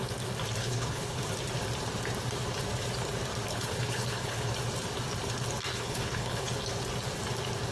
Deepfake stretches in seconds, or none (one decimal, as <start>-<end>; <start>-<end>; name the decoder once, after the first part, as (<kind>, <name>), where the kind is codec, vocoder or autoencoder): 0.6-1.2 (codec, HILCodec); 3.5-4.5; 5.7-6.5